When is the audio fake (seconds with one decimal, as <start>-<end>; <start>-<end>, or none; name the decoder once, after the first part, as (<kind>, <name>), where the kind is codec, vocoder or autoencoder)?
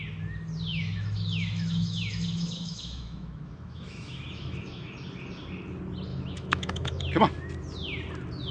0.7-4.9 (autoencoder, DAC-VAE); 6.1-7.0